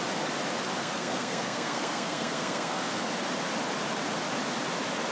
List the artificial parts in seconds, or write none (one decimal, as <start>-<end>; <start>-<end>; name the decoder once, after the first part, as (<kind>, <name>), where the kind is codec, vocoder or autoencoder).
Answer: 0.8-3.0 (codec, SNAC)